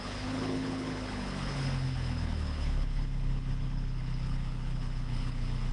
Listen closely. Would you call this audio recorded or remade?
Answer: remade